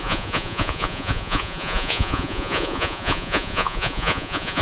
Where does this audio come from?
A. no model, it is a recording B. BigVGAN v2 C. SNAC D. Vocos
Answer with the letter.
D